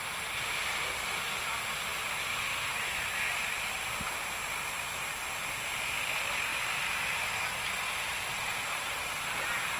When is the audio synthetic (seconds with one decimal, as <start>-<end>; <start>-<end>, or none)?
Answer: 6.5-9.4